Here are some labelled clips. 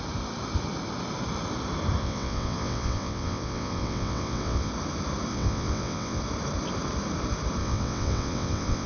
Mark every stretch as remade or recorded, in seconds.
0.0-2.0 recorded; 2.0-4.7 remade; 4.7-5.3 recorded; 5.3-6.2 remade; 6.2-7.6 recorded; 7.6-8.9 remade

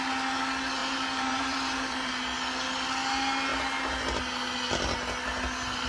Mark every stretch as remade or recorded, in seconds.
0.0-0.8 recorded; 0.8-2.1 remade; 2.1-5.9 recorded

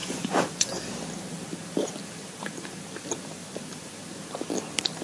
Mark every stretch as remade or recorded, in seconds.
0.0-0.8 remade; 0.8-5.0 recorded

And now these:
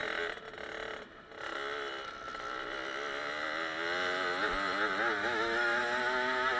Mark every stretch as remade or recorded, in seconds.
0.0-5.2 recorded; 5.2-5.8 remade; 5.8-6.6 recorded

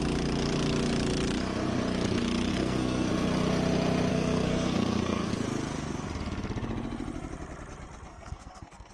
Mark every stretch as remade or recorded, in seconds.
0.0-2.5 recorded; 2.5-3.1 remade; 3.1-4.1 recorded; 4.1-5.3 remade; 5.3-8.1 recorded; 8.1-8.9 remade

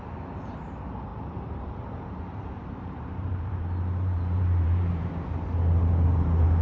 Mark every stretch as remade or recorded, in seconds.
0.0-1.1 recorded; 1.1-5.1 remade; 5.1-6.6 recorded